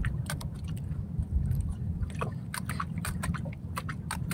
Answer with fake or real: real